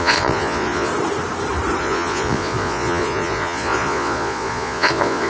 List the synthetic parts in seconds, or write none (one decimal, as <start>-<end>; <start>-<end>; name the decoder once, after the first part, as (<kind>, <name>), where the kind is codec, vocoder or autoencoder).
0.0-0.9 (vocoder, Vocos); 1.8-5.3